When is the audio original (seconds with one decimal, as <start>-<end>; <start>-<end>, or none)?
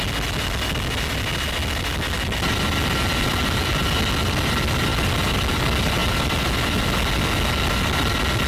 0.0-8.5